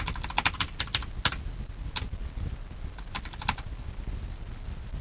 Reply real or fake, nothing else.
real